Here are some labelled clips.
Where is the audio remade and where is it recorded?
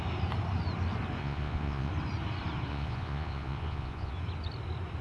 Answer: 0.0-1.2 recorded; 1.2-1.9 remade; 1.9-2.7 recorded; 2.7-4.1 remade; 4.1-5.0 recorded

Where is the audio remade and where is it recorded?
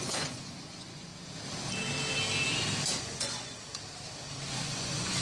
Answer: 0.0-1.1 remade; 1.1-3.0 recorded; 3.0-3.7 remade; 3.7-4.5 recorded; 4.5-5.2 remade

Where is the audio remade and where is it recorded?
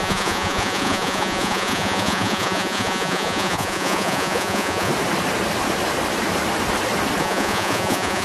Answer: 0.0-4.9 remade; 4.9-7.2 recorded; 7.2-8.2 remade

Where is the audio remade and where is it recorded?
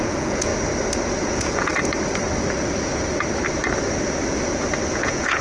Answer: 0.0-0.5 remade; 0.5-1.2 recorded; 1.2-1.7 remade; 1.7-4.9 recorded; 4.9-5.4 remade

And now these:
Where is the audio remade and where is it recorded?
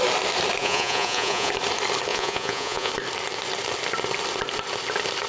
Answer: 0.0-0.6 recorded; 0.6-1.5 remade; 1.5-2.1 recorded; 2.1-2.9 remade; 2.9-5.3 recorded